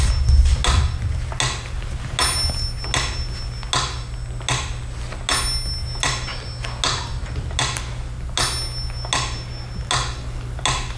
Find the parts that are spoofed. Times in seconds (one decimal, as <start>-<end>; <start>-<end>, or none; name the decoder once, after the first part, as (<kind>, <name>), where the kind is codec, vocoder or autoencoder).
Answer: none